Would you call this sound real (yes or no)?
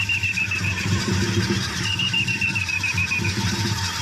yes